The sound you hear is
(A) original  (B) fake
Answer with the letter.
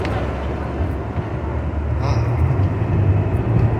A